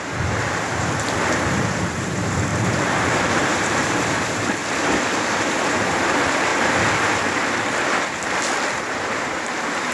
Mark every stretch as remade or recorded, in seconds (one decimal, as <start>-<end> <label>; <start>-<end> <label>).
0.0-4.6 remade; 4.6-5.3 recorded; 5.3-6.5 remade; 6.5-8.8 recorded; 8.8-9.9 remade